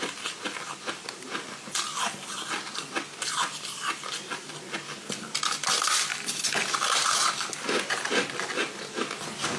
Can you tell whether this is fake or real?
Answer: real